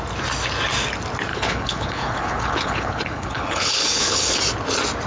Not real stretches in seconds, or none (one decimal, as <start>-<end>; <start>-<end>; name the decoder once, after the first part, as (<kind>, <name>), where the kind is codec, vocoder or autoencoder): 1.3-4.4 (codec, HILCodec)